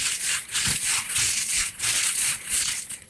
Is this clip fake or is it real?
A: fake